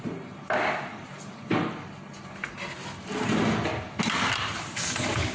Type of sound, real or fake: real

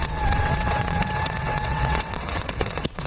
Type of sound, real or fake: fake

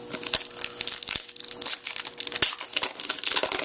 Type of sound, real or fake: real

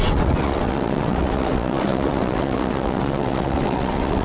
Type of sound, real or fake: fake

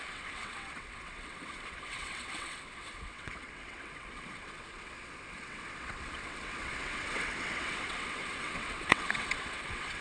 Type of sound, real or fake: fake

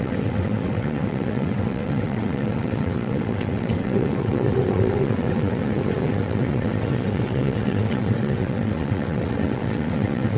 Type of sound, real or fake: fake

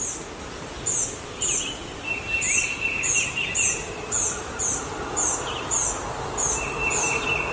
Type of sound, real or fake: real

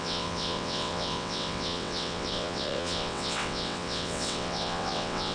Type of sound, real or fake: fake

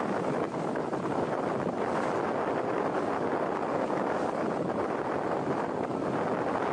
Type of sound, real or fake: real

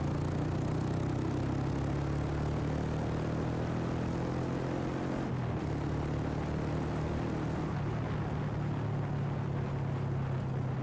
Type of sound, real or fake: real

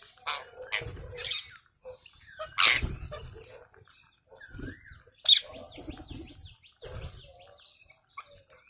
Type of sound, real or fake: real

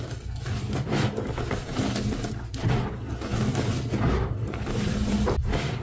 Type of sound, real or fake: real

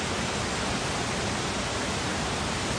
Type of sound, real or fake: real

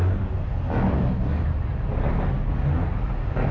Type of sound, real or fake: real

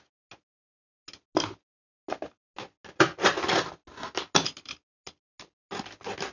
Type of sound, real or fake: real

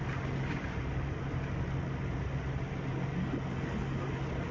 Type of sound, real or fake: real